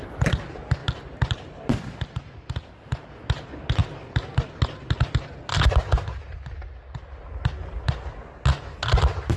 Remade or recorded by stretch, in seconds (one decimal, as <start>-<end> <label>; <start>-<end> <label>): 0.0-9.4 recorded